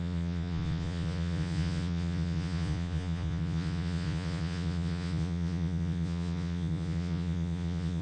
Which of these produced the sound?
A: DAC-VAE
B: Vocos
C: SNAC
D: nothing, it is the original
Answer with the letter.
B